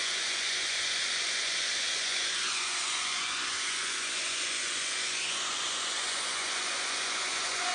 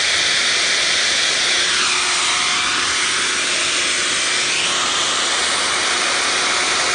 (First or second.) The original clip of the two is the second